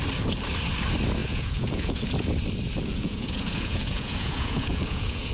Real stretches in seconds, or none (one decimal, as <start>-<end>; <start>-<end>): 0.0-1.2; 2.0-2.9